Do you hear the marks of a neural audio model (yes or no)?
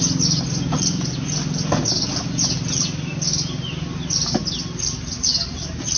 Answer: no